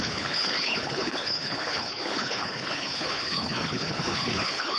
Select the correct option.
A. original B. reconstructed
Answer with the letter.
B